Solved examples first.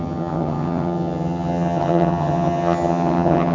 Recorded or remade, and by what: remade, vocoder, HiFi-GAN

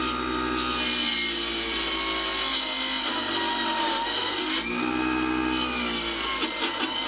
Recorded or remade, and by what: recorded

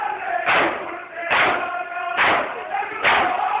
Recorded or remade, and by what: recorded